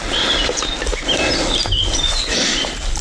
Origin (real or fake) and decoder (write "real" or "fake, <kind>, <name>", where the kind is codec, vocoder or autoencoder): real